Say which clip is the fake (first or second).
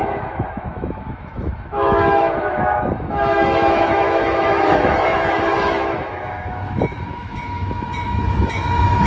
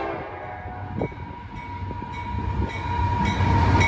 first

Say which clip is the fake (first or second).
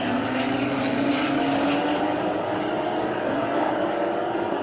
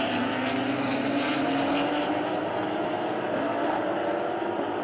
first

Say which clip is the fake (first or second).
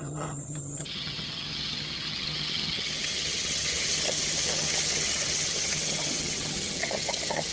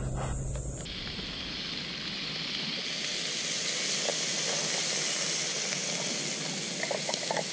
first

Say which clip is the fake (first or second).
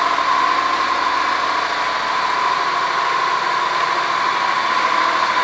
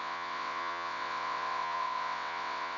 second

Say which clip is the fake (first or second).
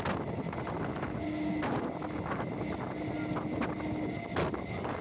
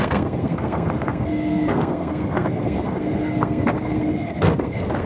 second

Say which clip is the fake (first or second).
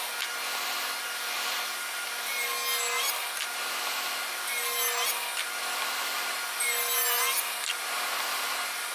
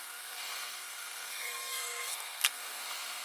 second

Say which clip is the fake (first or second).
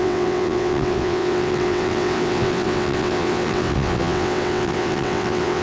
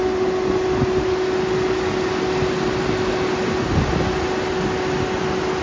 first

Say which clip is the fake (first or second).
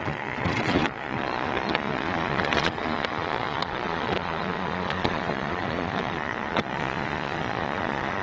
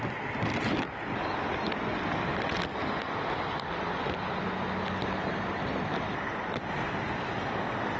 first